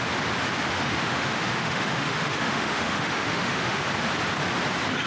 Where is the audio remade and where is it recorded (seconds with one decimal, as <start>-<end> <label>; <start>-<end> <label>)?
0.0-0.7 recorded; 0.7-3.8 remade; 3.8-5.1 recorded